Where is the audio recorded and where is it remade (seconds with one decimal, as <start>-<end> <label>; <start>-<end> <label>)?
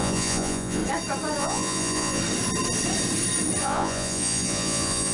0.0-0.8 remade; 0.8-1.4 recorded; 1.4-2.2 remade; 2.2-3.6 recorded; 3.6-5.1 remade